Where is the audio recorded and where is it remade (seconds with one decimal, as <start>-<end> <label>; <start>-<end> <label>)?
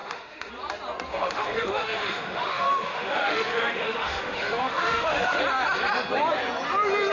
0.0-0.5 remade; 0.5-1.1 recorded; 1.1-5.4 remade; 5.4-7.1 recorded